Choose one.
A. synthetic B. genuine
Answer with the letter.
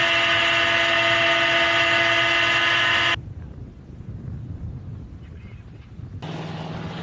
B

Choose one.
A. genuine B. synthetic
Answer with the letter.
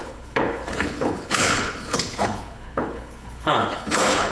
B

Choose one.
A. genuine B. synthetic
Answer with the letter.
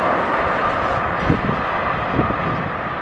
A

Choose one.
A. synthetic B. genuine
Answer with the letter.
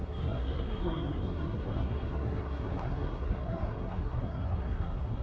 A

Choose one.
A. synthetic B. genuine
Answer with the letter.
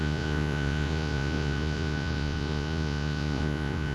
A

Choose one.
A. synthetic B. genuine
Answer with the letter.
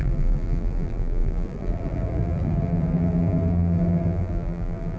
A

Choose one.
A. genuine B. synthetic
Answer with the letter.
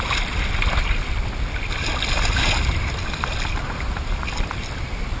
A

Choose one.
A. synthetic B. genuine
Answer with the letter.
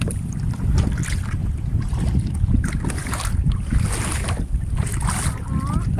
B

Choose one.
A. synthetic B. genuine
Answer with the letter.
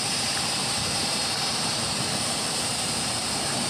A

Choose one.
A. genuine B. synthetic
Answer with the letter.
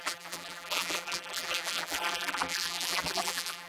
B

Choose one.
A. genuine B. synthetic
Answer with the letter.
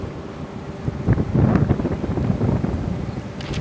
A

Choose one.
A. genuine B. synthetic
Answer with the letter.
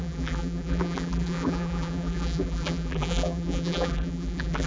B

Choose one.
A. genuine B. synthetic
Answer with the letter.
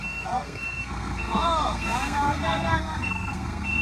B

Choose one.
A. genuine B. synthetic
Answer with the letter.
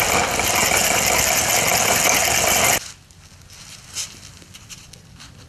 A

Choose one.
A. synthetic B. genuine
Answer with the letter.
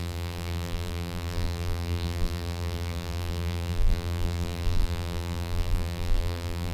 A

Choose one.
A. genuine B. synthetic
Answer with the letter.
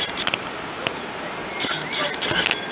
A